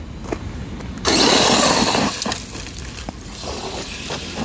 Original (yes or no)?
yes